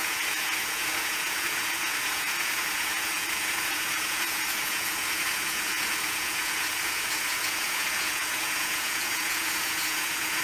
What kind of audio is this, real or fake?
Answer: fake